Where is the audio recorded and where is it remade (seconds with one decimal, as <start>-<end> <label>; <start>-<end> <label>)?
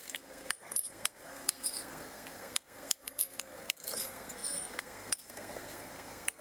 0.0-6.4 remade